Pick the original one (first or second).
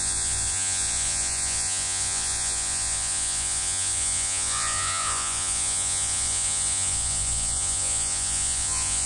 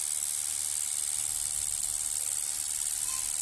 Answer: second